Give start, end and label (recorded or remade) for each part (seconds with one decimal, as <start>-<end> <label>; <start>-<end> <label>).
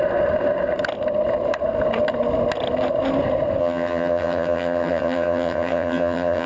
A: 0.0-3.6 recorded; 3.6-6.5 remade